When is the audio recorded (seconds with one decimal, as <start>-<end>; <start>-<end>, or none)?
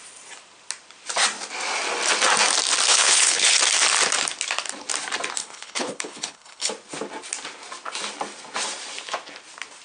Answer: 0.0-2.9; 3.6-5.4; 6.7-9.8